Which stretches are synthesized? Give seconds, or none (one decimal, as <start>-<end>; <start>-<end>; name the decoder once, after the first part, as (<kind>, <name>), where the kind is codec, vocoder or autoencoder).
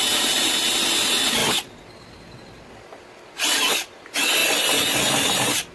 none